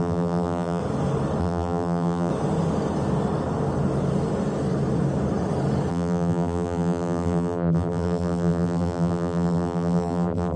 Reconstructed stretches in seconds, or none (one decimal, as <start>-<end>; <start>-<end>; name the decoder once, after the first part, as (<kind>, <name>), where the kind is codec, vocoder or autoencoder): 0.0-0.8 (vocoder, BigVGAN v2); 1.4-2.3; 5.9-10.6